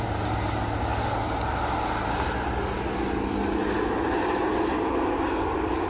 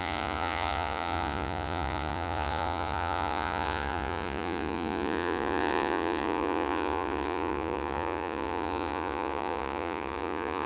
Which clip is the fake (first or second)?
second